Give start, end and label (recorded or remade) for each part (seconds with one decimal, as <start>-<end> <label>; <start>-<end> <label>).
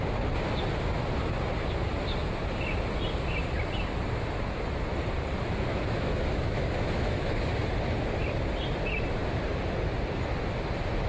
0.0-5.7 recorded; 5.7-7.4 remade; 7.4-11.1 recorded